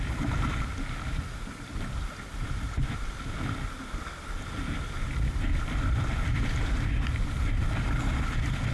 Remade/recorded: recorded